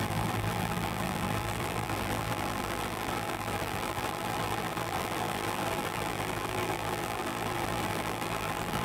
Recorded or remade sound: remade